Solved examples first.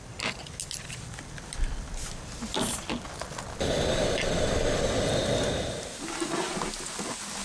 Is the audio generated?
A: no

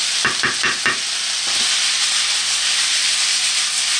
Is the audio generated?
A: yes